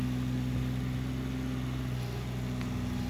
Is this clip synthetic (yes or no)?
no